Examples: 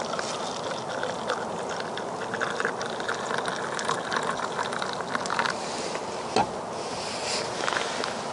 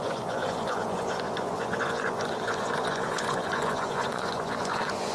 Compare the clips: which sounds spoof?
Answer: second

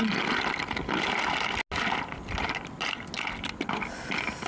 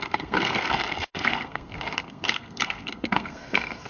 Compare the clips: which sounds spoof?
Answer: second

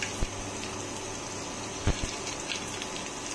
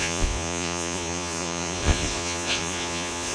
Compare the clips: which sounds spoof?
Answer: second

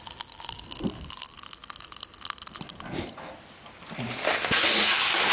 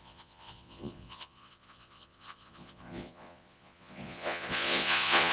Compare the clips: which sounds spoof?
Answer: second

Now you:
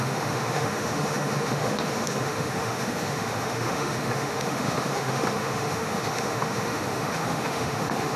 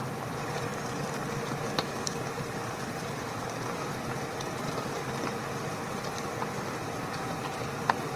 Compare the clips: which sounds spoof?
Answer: first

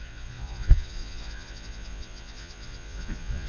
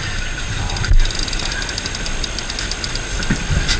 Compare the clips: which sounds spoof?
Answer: first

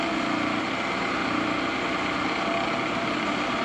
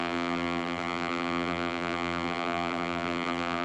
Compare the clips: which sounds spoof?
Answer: second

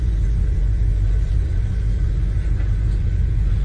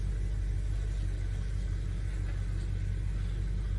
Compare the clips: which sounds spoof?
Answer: first